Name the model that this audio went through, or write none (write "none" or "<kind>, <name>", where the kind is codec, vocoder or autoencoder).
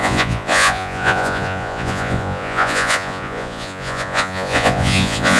vocoder, Vocos